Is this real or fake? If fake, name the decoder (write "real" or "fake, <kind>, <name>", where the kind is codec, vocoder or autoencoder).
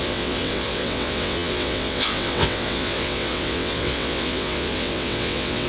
fake, vocoder, WaveNeXt